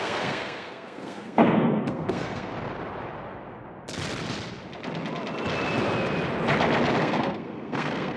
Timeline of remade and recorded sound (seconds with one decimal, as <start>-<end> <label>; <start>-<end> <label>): 0.0-2.5 remade; 2.5-7.0 recorded; 7.0-8.2 remade